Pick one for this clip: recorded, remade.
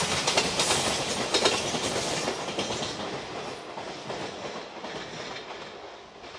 recorded